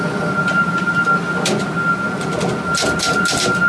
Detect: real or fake real